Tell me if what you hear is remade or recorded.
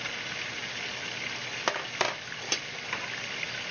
recorded